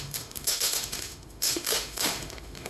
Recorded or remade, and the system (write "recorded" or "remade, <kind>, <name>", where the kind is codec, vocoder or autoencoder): remade, autoencoder, DAC-VAE